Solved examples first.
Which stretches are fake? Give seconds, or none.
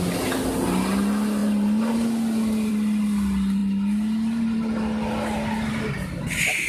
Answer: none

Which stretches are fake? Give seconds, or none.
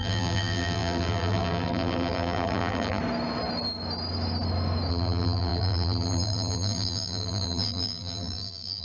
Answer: 0.0-3.0 (vocoder, BigVGAN v2); 4.9-8.8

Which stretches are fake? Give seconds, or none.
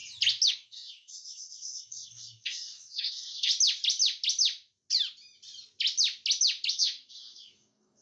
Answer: 0.5-3.5 (codec, DAC); 6.7-8.0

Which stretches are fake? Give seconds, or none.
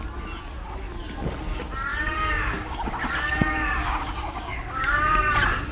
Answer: 1.9-5.3 (codec, DAC)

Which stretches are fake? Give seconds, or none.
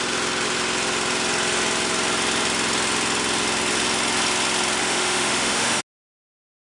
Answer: 4.8-5.8 (autoencoder, DAC-VAE)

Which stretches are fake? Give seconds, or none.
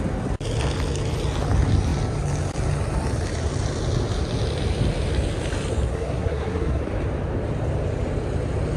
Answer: 5.9-6.8 (codec, SNAC)